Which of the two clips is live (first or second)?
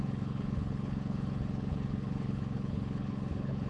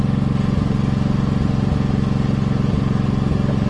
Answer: second